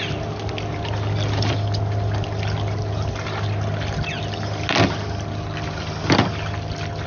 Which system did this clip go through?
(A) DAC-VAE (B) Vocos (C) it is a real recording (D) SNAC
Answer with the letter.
C